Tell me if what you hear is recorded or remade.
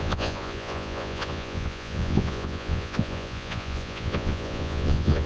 remade